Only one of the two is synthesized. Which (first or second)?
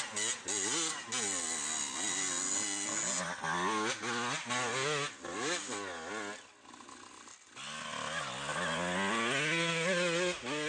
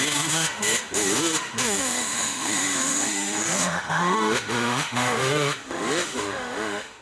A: second